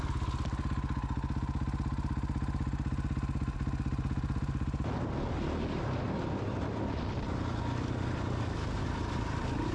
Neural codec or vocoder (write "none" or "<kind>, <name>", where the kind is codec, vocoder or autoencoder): none